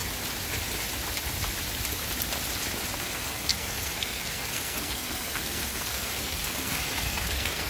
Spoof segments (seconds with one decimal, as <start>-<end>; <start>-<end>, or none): 3.0-7.7